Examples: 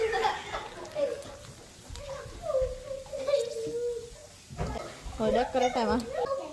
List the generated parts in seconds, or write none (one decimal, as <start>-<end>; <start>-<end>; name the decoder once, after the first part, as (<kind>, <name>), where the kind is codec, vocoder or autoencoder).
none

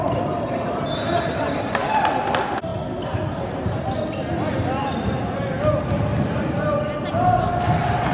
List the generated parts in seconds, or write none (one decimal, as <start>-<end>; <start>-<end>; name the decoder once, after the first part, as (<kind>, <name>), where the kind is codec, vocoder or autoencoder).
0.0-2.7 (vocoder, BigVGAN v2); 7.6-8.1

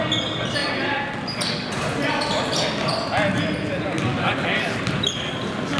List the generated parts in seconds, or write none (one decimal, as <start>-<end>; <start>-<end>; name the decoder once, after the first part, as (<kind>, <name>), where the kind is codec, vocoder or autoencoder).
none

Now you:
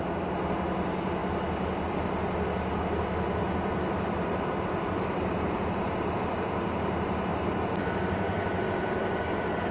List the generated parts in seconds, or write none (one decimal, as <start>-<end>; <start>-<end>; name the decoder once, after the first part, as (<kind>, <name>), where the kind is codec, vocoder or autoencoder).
3.4-6.4 (vocoder, BigVGAN v2); 7.3-9.7